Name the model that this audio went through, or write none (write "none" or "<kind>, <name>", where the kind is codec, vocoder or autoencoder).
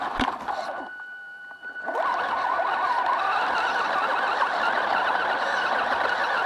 vocoder, BigVGAN v2